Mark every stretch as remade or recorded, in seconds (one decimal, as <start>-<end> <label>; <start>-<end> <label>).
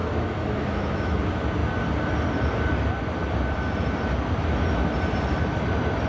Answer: 0.0-1.2 remade; 1.2-6.1 recorded